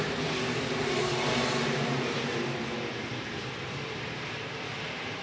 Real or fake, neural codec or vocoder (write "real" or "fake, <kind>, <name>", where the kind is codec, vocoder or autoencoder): fake, vocoder, BigVGAN v2